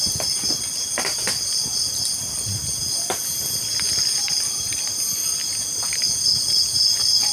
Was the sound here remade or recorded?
recorded